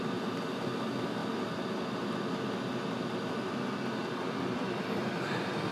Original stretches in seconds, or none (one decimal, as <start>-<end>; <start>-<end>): 1.2-4.1